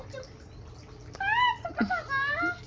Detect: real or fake real